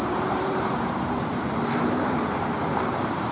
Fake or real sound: fake